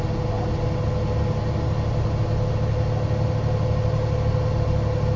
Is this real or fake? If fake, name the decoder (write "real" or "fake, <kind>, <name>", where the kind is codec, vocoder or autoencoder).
real